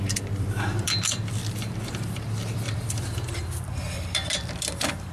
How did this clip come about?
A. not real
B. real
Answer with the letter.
A